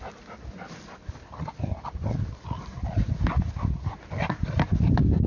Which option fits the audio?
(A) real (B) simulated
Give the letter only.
A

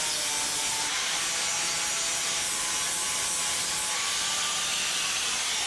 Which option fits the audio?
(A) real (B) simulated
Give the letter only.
A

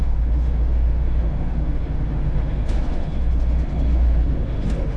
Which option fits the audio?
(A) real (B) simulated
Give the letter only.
B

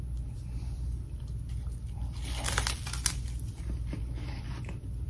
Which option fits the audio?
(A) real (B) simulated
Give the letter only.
A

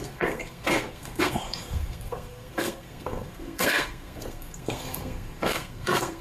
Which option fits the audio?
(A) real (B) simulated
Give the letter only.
B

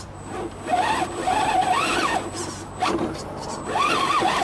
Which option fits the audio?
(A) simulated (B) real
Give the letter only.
B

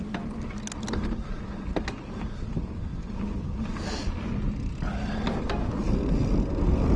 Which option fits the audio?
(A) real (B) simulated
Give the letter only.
A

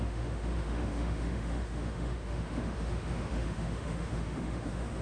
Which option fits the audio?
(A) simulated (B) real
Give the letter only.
A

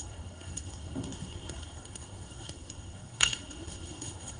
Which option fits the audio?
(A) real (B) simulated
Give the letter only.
B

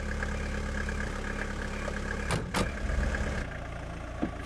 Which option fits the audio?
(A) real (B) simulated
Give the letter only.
A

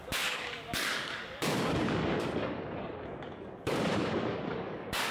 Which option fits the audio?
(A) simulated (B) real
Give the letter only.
A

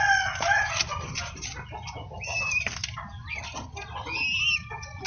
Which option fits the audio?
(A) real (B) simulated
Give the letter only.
A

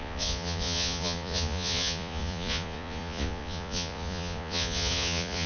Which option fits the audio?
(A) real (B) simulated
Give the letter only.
B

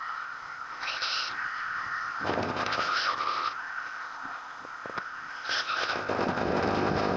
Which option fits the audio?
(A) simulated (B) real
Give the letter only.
A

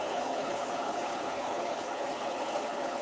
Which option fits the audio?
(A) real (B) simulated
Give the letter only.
B